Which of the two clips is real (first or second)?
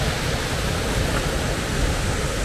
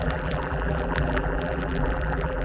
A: first